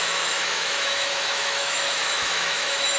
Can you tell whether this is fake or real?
fake